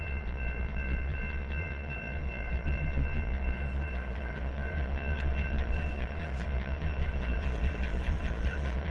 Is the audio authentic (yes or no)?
no